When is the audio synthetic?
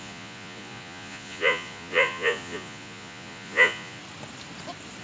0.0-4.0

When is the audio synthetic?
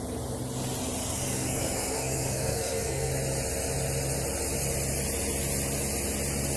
1.0-3.1